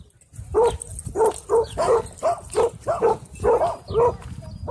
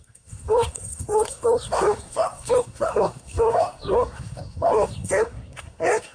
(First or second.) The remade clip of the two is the second